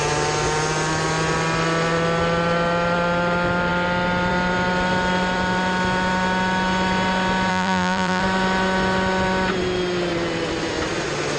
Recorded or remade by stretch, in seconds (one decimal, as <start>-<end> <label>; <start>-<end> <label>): 0.0-7.5 recorded; 7.5-8.2 remade; 8.2-11.4 recorded